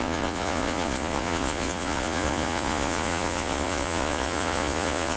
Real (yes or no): no